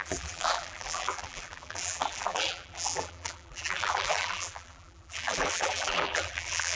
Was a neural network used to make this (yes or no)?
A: yes